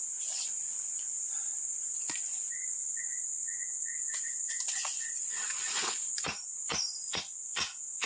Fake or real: fake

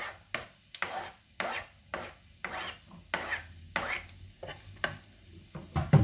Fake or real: real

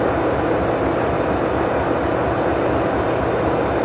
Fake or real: real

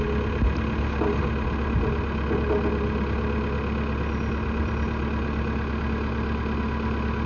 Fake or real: real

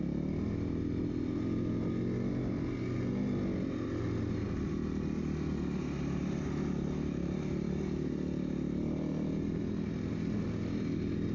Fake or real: real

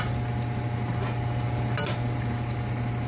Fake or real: real